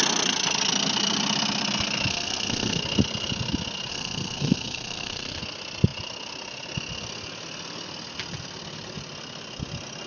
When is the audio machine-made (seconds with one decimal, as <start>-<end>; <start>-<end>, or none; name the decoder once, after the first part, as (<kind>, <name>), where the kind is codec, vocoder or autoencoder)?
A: 2.1-2.8 (codec, SNAC); 3.9-5.4